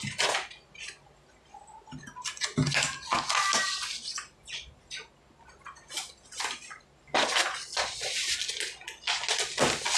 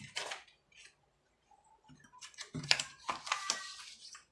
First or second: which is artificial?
second